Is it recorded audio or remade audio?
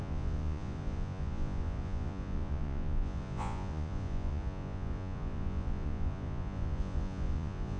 remade